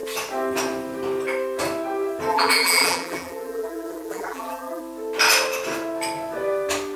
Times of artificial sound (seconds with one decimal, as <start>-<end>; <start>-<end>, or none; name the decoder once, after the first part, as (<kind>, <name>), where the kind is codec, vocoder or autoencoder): 2.3-4.8 (vocoder, BigVGAN v2)